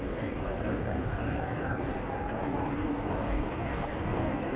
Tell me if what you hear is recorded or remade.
remade